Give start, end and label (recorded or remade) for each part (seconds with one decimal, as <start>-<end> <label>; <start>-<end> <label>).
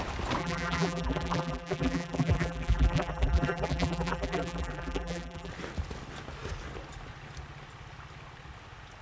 0.0-0.4 recorded; 0.4-5.5 remade; 5.5-9.0 recorded